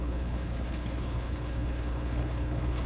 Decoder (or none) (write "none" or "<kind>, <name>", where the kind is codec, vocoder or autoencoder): codec, HILCodec